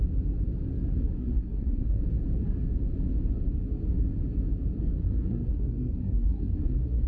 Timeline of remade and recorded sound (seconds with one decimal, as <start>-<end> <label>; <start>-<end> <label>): 0.0-1.2 recorded; 1.2-2.0 remade; 2.0-5.0 recorded; 5.0-7.1 remade